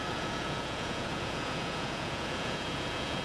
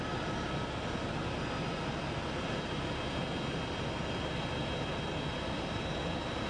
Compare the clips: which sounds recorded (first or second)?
second